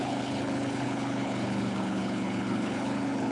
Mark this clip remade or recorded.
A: remade